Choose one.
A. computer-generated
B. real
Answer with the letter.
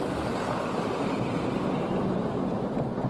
B